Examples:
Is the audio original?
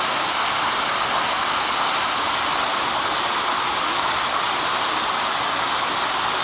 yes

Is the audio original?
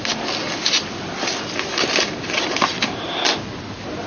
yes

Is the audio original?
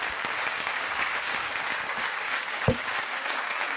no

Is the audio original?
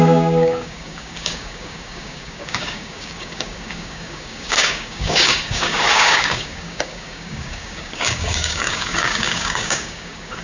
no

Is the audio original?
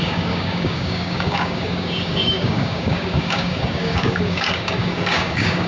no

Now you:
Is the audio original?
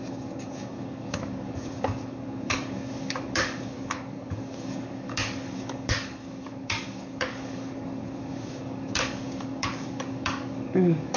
no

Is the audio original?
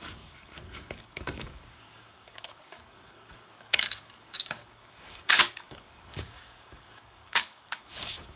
no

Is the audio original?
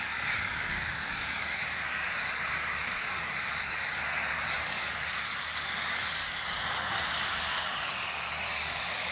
no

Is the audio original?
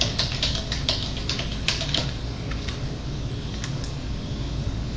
no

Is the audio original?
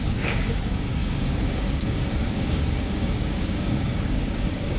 no